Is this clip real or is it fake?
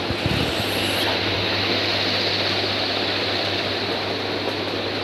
real